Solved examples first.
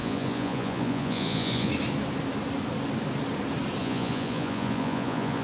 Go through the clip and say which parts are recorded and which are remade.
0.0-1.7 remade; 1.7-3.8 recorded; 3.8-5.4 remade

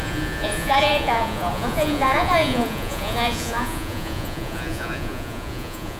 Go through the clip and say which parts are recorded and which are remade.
0.0-6.0 remade

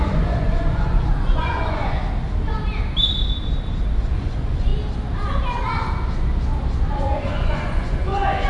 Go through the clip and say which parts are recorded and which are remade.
0.0-2.0 remade; 2.0-4.2 recorded; 4.2-4.7 remade; 4.7-7.0 recorded; 7.0-8.5 remade

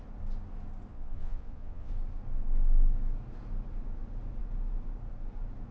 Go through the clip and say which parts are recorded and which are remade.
0.0-0.9 recorded; 0.9-1.9 remade; 1.9-5.7 recorded

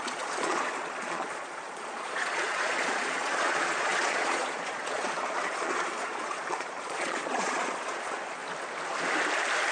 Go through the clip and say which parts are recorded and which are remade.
0.0-8.4 remade; 8.4-9.7 recorded

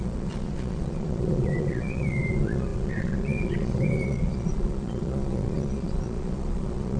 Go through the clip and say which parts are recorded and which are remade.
0.0-7.0 remade